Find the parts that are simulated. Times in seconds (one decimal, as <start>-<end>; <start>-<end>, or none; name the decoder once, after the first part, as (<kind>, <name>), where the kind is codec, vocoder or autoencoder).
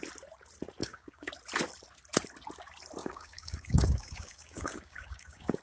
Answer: 0.8-1.3 (codec, DAC); 3.0-5.6